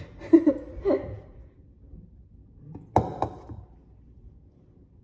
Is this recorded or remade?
recorded